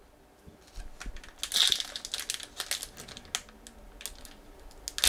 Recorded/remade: recorded